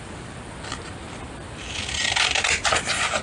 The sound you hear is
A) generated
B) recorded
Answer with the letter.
B